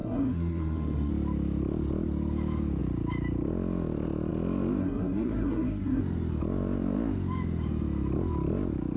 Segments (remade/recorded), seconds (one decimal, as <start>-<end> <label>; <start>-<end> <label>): 0.0-1.1 remade; 1.1-4.8 recorded; 4.8-6.0 remade; 6.0-9.0 recorded